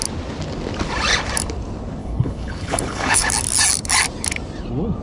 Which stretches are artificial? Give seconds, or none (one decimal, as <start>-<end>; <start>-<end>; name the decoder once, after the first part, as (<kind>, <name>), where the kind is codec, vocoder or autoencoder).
2.0-3.3 (codec, HILCodec)